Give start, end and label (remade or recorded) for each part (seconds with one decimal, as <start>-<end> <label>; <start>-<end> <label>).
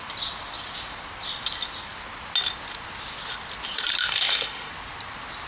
0.0-4.0 recorded; 4.0-4.7 remade; 4.7-5.5 recorded